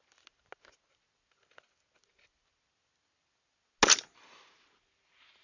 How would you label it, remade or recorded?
recorded